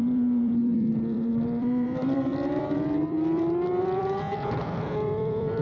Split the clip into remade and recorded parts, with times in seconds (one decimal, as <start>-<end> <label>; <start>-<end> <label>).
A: 0.0-5.6 remade